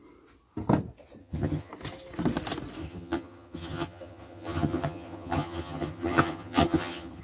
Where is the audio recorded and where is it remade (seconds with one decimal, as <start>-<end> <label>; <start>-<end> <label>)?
0.0-1.2 recorded; 1.2-1.7 remade; 1.7-2.8 recorded; 2.8-7.2 remade